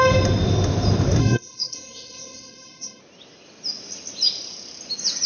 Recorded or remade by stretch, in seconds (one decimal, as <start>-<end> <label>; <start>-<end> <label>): 0.0-1.2 recorded; 1.2-3.0 remade; 3.0-5.3 recorded